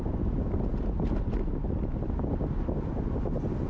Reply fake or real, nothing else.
real